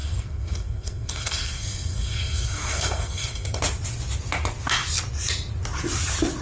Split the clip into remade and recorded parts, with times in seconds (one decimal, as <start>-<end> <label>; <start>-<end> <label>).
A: 0.0-3.6 remade; 3.6-6.4 recorded